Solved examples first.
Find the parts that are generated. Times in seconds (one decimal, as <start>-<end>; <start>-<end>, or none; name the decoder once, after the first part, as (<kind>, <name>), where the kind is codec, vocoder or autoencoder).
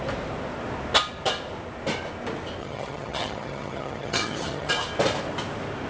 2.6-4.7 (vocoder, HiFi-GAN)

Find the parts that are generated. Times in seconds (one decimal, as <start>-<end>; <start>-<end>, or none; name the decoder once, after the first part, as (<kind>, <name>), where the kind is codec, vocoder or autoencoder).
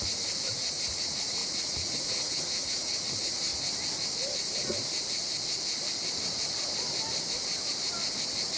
0.0-3.5 (vocoder, Vocos)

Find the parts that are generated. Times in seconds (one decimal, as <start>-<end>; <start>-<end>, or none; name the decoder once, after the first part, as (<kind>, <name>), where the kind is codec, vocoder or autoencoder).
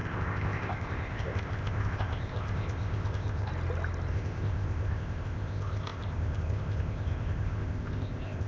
0.0-3.5 (codec, ZipCodec); 4.1-8.5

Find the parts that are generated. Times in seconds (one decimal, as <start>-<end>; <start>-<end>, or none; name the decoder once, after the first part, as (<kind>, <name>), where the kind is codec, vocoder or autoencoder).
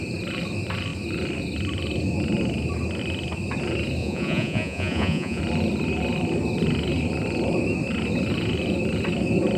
4.0-5.4 (vocoder, Vocos)